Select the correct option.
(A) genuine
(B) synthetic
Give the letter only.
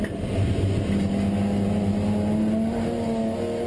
A